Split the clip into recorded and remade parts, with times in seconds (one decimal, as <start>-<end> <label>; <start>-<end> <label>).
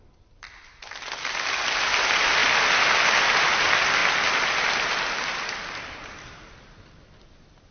0.0-7.7 recorded